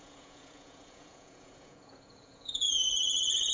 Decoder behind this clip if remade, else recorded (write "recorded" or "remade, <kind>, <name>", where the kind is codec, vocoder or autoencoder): remade, vocoder, Vocos